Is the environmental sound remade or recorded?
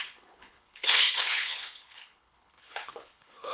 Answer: remade